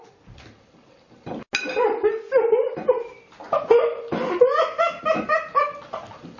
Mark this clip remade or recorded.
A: recorded